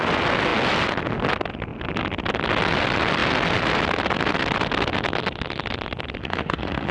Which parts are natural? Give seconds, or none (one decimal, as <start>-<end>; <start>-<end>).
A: 0.0-6.2